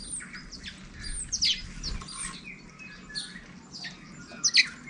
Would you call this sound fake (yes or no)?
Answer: no